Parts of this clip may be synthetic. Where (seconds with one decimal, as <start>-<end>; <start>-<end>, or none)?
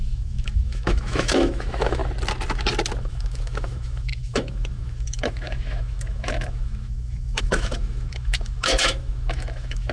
0.0-2.0; 3.0-9.9